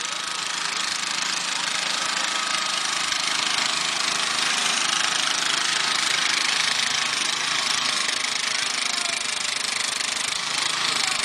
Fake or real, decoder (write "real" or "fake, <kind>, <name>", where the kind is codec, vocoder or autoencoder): real